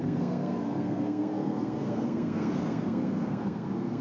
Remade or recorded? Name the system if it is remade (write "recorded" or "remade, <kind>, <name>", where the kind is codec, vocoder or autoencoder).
remade, codec, SNAC